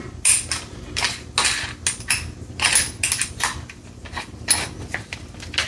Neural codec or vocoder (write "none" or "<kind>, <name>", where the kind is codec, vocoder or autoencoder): none